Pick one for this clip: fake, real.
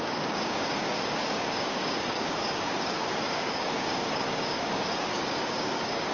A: fake